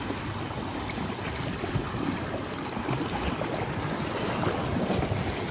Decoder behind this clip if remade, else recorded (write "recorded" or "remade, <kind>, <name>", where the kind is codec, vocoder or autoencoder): recorded